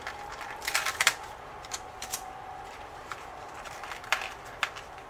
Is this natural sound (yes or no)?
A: no